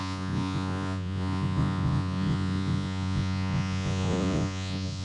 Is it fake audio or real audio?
fake